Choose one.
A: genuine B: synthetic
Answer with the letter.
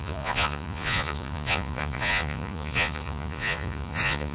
B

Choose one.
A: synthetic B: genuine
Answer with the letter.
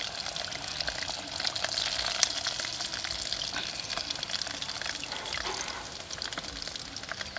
B